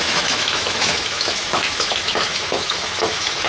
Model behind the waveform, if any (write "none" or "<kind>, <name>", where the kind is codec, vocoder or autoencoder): autoencoder, DAC-VAE